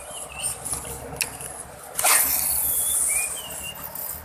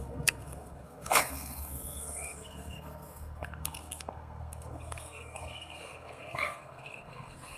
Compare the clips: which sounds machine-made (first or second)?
second